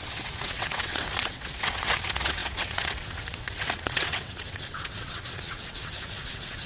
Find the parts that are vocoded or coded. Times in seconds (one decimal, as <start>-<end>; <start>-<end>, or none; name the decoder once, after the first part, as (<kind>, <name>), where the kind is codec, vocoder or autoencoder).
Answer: 0.0-6.7 (vocoder, WaveNeXt)